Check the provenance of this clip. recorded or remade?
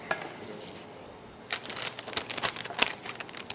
recorded